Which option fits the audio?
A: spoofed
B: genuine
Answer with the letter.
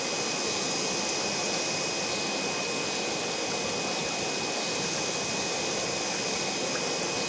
B